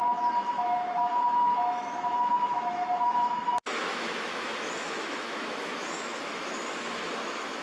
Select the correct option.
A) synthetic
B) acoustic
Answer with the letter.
A